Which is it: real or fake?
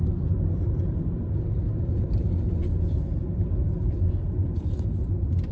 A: real